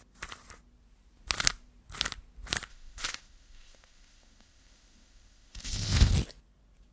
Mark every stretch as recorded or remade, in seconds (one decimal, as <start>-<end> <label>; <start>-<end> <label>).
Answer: 0.0-2.7 recorded; 2.7-6.1 remade; 6.1-6.9 recorded